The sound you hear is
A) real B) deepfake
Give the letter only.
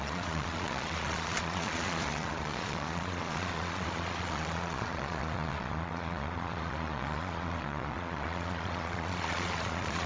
B